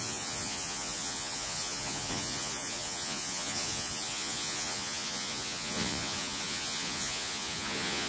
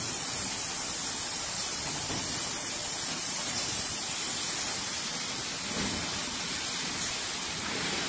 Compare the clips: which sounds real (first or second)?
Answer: second